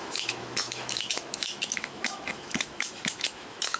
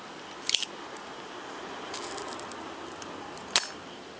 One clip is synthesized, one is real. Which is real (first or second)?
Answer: second